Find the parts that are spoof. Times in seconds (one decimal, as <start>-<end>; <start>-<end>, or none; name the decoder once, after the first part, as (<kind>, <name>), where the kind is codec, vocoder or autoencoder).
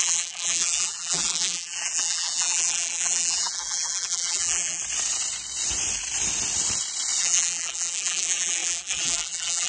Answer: 0.0-4.8 (vocoder, BigVGAN v2); 7.2-9.7